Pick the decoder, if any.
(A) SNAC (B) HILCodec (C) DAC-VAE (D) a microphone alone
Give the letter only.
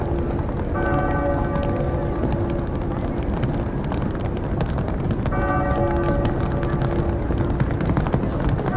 D